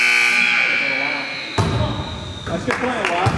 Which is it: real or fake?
real